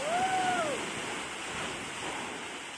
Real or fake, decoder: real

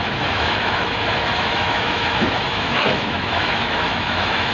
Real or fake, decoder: fake, autoencoder, DAC-VAE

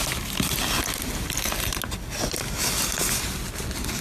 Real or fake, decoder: real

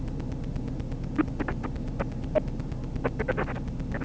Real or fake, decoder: real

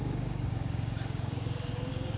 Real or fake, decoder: fake, codec, DAC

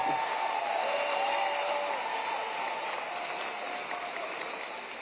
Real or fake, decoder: real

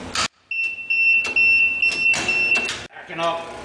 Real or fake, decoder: real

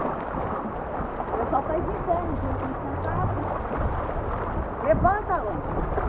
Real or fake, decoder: real